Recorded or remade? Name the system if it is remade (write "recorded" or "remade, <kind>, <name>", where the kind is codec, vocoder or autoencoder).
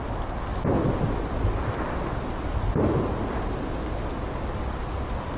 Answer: recorded